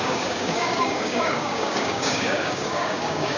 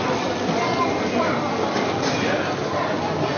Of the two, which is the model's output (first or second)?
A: first